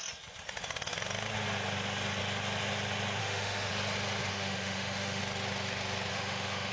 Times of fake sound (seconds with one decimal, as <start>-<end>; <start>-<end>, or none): 3.2-3.7; 4.3-5.2; 6.1-6.7